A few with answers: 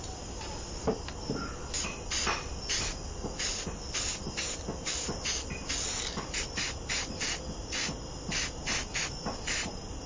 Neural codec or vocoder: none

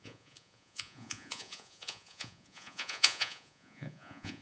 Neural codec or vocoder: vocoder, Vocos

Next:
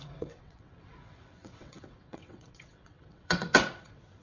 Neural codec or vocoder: vocoder, WaveNeXt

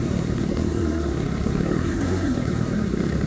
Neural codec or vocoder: codec, SNAC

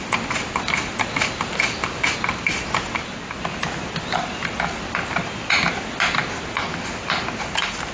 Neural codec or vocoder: none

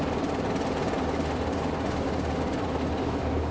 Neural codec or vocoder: none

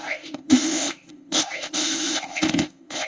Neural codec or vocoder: codec, ZipCodec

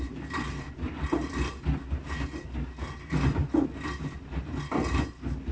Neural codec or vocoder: none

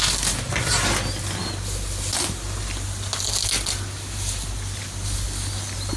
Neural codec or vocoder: none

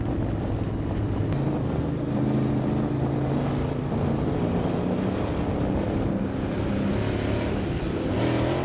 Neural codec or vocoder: none